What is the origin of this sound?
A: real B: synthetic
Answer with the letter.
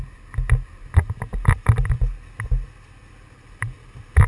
A